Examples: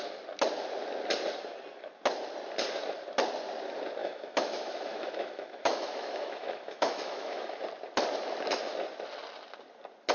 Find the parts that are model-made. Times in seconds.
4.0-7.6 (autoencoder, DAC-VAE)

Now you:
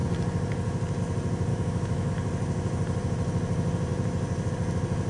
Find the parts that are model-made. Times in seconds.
1.5-2.1 (autoencoder, DAC-VAE)

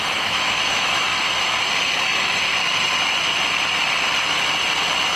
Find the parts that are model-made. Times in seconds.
0.0-1.1 (autoencoder, DAC-VAE); 2.0-2.5

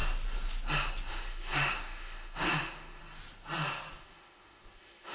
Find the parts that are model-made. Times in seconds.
1.1-3.0 (autoencoder, DAC-VAE); 4.0-5.1

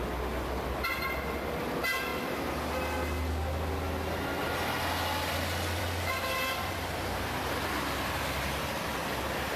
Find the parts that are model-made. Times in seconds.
none

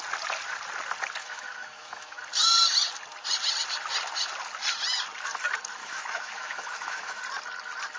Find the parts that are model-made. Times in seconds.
1.2-2.2 (autoencoder, DAC-VAE); 5.8-7.2

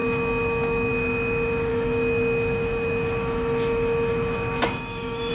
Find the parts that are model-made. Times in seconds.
0.0-0.9 (autoencoder, DAC-VAE); 1.7-5.3